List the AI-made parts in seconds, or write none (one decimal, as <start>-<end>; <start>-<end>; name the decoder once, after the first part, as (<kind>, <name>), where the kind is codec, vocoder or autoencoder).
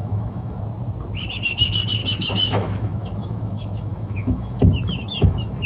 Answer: 0.0-0.6 (autoencoder, DAC-VAE); 2.0-5.7